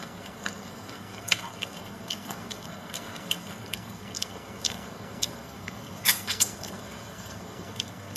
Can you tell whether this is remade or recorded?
remade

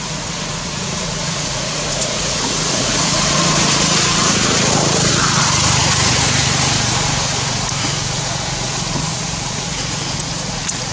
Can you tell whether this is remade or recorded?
remade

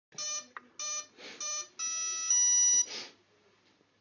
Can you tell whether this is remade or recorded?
recorded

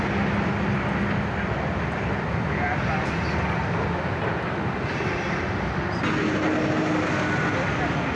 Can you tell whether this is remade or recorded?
recorded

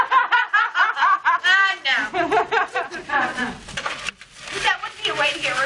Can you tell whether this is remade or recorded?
recorded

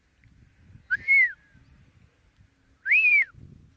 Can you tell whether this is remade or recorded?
recorded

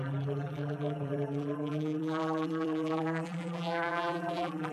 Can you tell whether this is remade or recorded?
remade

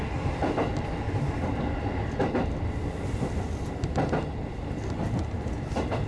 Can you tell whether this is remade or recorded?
recorded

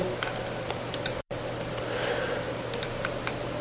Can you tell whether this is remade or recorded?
recorded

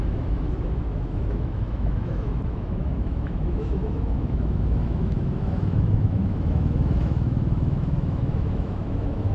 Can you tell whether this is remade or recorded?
remade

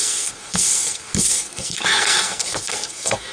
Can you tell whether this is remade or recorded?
remade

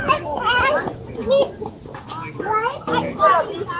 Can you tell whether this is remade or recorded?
recorded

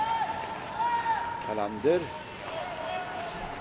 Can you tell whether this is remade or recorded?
recorded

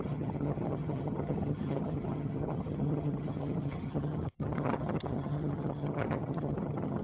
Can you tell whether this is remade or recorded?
remade